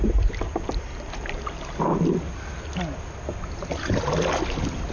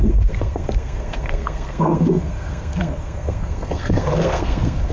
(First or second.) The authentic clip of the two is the first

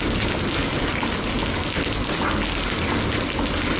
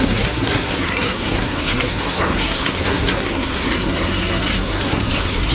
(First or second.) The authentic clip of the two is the first